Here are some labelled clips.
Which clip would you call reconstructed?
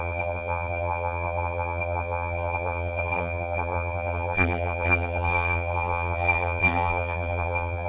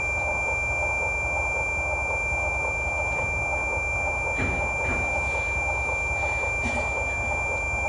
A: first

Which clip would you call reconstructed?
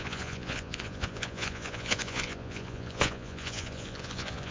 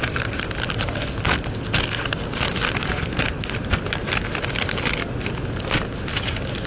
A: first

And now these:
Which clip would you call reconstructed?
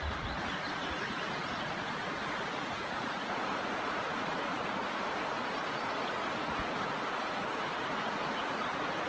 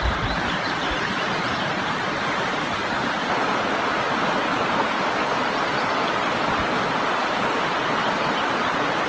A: first